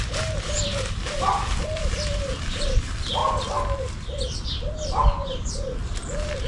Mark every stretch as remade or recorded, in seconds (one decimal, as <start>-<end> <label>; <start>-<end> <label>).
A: 0.0-6.5 remade